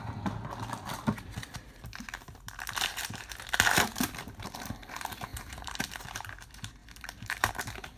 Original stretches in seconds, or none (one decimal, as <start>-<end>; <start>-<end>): 0.0-5.3; 5.9-6.8; 7.5-8.0